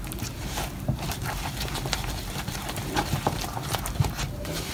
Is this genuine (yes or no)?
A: no